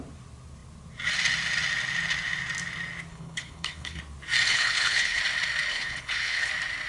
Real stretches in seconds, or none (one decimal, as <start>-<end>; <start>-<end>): 0.0-3.1; 4.0-4.5; 5.2-5.7; 6.5-6.9